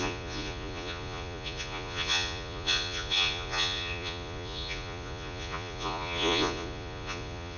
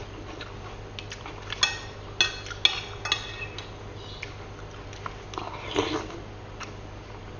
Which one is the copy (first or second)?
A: first